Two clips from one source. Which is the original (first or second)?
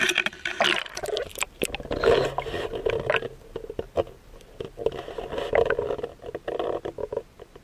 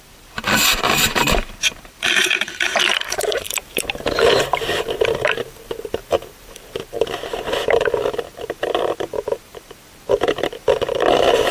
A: first